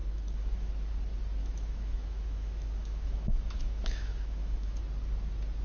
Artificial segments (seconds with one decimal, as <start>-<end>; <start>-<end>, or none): 0.0-0.7; 1.4-4.8